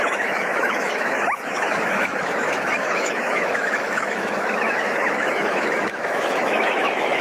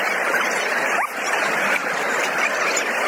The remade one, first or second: first